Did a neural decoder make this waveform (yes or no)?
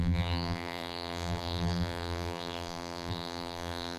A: yes